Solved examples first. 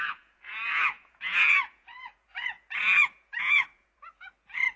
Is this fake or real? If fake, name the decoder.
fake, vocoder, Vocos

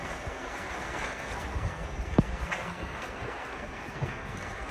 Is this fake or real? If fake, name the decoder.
fake, codec, SNAC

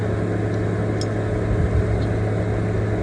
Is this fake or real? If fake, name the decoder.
real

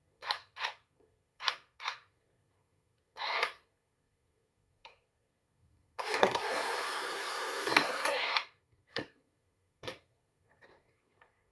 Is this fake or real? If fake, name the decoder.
fake, codec, SNAC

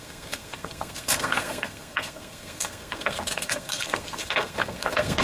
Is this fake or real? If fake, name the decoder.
fake, codec, SNAC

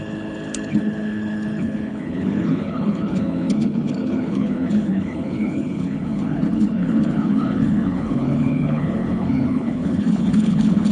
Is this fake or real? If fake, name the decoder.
fake, codec, HILCodec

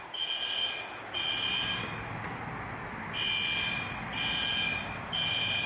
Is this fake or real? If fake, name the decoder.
real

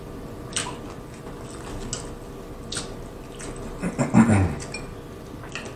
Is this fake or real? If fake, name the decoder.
real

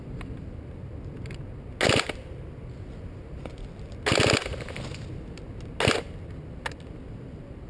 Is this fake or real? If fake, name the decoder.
real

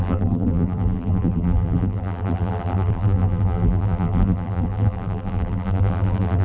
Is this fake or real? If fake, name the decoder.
fake, vocoder, BigVGAN v2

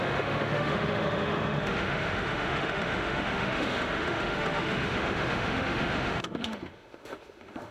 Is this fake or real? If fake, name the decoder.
fake, autoencoder, DAC-VAE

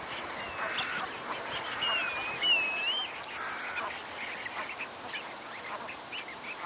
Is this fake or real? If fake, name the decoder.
real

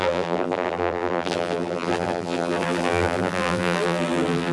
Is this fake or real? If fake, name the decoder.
fake, vocoder, BigVGAN v2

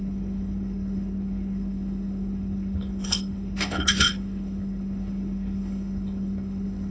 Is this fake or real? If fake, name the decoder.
fake, codec, HILCodec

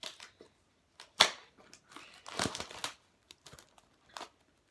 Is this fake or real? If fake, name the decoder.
real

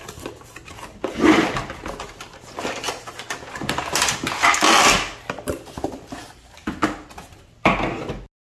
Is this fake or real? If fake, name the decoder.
real